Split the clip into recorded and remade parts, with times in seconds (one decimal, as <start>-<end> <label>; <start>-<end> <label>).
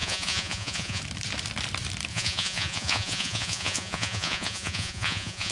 0.0-1.0 remade; 1.0-2.1 recorded; 2.1-5.5 remade